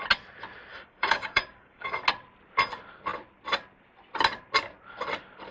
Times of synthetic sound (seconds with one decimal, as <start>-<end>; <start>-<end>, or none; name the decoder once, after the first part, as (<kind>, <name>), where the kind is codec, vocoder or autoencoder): 0.7-2.0 (codec, DAC)